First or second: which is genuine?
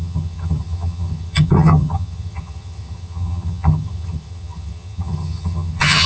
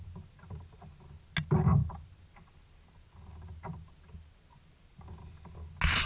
second